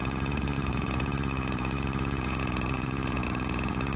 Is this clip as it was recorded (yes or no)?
no